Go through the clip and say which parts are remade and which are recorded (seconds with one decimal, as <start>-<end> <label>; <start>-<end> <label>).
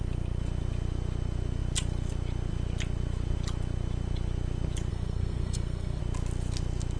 0.0-4.9 recorded; 4.9-6.0 remade; 6.0-7.0 recorded